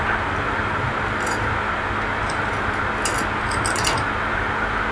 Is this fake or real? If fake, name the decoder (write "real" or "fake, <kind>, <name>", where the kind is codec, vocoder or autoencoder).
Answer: real